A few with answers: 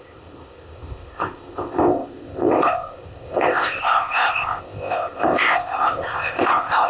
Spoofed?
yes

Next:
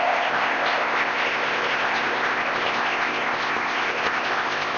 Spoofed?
yes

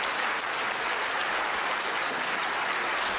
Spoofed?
no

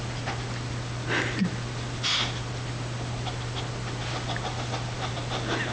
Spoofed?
no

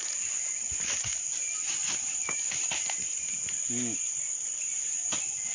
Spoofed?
no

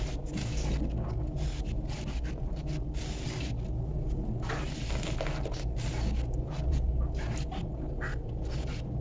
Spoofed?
no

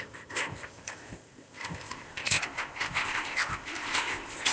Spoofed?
yes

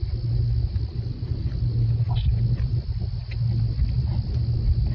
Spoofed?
no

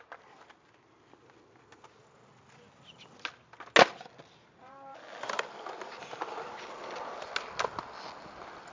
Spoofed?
no